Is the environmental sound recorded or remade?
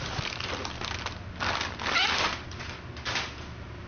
recorded